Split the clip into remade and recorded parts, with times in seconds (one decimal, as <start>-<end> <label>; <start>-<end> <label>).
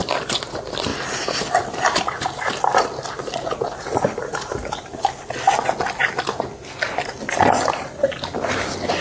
0.0-9.0 recorded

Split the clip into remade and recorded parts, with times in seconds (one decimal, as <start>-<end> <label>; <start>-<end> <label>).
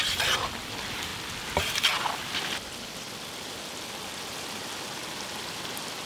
0.0-6.1 recorded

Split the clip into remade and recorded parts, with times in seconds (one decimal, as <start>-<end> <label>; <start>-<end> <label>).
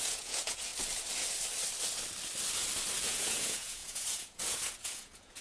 0.0-0.7 remade; 0.7-3.0 recorded; 3.0-5.4 remade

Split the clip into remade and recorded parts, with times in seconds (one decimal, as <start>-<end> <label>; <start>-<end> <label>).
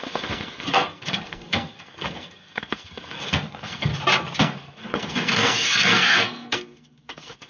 0.0-3.9 remade; 3.9-4.4 recorded; 4.4-7.5 remade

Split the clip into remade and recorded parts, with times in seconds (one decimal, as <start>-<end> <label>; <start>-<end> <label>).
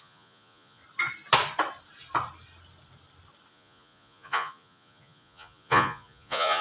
0.0-0.8 remade; 0.8-3.5 recorded; 3.5-6.6 remade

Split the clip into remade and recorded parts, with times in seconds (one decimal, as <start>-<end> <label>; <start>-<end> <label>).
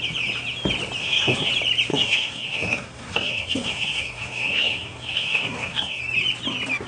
0.0-1.0 recorded; 1.0-1.5 remade; 1.5-1.9 recorded; 1.9-6.0 remade; 6.0-6.9 recorded